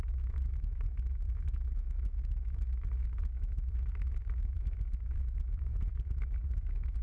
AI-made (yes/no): yes